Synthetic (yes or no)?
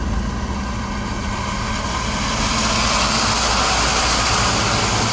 no